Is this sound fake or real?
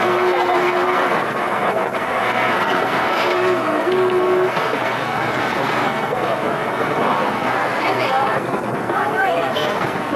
fake